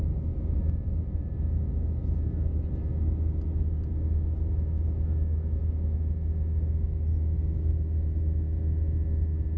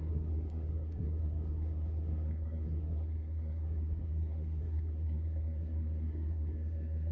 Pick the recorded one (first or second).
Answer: first